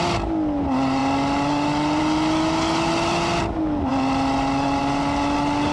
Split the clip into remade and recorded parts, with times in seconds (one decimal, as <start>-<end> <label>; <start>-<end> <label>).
0.0-5.7 recorded